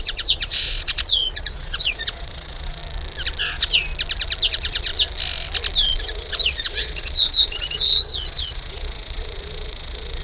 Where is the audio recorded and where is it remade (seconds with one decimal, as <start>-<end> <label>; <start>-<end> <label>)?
0.0-2.8 remade; 2.8-3.4 recorded; 3.4-3.9 remade; 3.9-4.5 recorded; 4.5-4.9 remade; 4.9-6.0 recorded; 6.0-10.2 remade